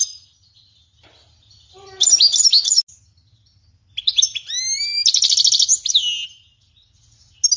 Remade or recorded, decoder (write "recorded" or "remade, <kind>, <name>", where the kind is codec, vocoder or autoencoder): recorded